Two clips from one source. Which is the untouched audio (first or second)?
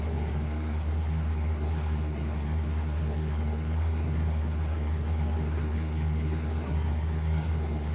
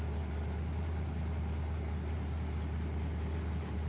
second